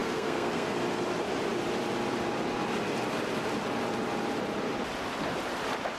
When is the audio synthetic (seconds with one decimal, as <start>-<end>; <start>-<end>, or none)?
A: 0.0-0.8

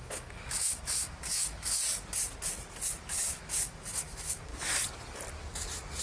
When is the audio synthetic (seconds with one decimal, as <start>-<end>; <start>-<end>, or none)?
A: 0.0-1.8; 2.9-4.5

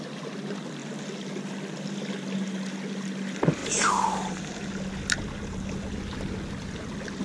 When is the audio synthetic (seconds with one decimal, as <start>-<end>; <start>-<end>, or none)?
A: none

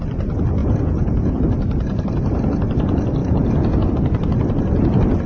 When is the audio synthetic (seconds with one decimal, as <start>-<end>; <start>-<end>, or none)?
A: 0.6-1.4; 3.2-3.9

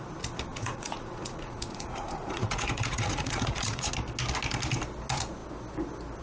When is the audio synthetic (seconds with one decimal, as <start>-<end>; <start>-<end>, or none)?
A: 0.5-3.9

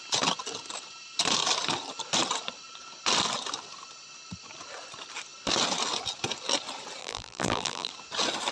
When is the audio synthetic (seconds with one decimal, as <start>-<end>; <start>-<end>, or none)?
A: 7.0-7.9

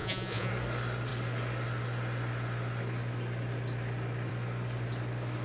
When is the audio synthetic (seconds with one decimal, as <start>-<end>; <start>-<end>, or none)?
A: 0.0-0.5

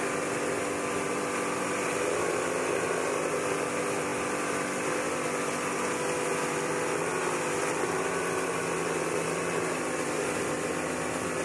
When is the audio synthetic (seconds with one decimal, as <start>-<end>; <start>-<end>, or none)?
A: none